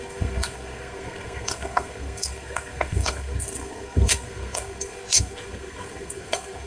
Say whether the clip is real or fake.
fake